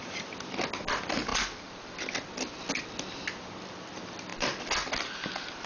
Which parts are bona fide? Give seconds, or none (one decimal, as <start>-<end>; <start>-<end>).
0.0-5.7